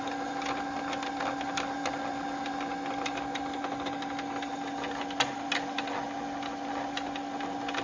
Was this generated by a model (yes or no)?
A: no